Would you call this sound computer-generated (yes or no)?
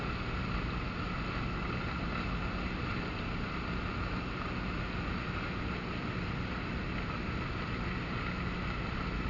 no